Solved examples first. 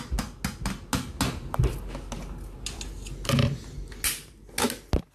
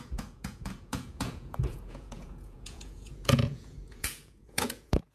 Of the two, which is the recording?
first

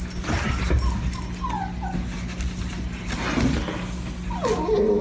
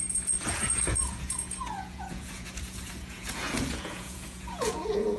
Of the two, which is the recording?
first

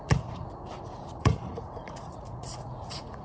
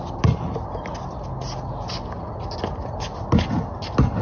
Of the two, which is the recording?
second